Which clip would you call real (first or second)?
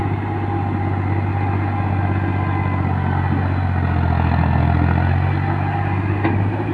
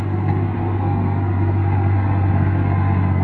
first